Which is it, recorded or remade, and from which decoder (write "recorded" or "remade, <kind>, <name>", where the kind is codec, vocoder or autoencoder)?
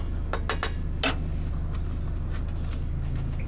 recorded